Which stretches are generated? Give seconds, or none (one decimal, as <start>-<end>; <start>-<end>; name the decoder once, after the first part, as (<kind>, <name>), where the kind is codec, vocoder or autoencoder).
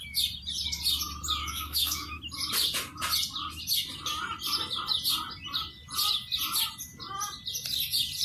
1.4-2.2 (autoencoder, DAC-VAE)